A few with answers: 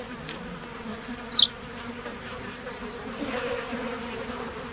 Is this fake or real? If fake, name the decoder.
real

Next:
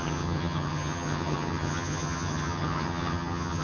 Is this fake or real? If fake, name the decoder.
fake, vocoder, HiFi-GAN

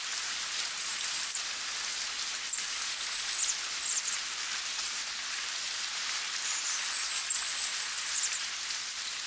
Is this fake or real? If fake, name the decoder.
real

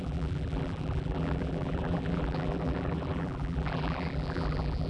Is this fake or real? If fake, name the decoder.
fake, vocoder, BigVGAN v2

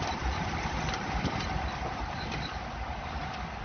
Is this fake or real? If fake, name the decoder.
fake, vocoder, BigVGAN v2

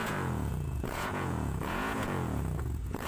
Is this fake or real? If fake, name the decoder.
fake, vocoder, Vocos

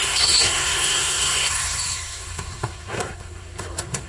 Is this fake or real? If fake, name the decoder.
fake, codec, SNAC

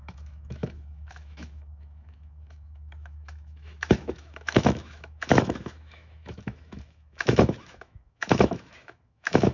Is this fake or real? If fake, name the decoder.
fake, autoencoder, DAC-VAE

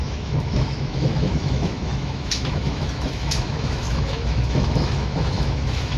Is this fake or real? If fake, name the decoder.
fake, autoencoder, DAC-VAE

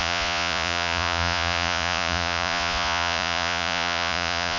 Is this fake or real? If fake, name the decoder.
fake, vocoder, Vocos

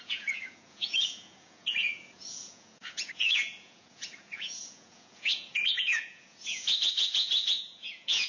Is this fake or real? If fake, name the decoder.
fake, vocoder, Vocos